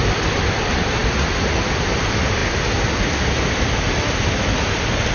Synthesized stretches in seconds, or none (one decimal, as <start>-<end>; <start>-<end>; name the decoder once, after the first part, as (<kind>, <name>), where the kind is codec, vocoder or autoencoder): none